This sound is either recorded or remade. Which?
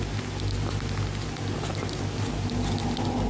recorded